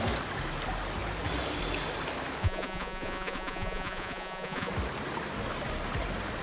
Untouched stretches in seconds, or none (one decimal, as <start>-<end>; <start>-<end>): 0.0-2.4; 4.7-6.4